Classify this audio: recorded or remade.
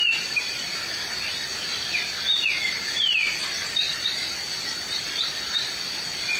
remade